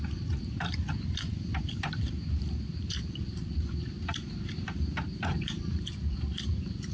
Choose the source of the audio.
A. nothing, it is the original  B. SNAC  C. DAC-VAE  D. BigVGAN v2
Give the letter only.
D